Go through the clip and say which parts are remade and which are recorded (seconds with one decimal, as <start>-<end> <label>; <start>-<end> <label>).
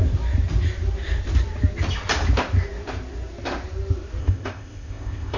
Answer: 0.0-4.2 recorded; 4.2-5.4 remade